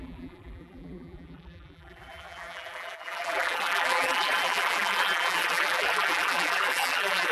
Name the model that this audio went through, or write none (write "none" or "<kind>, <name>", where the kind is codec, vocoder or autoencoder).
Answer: vocoder, BigVGAN v2